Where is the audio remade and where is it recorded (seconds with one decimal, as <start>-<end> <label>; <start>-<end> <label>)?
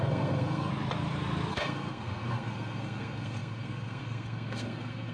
0.0-0.7 remade; 0.7-1.5 recorded; 1.5-5.1 remade